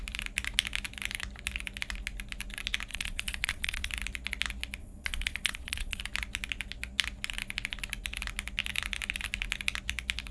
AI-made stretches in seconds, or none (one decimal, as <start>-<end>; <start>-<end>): 2.9-3.9; 4.8-6.0

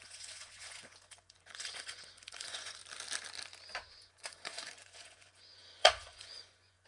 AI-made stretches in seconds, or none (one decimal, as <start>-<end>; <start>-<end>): 0.0-2.8; 3.9-6.9